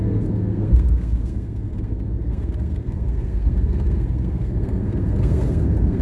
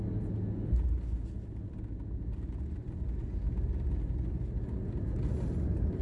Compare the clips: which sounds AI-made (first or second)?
first